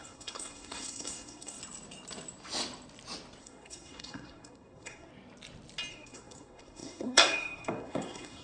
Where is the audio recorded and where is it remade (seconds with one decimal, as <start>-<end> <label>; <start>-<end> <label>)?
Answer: 0.0-1.6 remade; 1.6-3.4 recorded; 3.4-5.1 remade; 5.1-5.9 recorded; 5.9-8.4 remade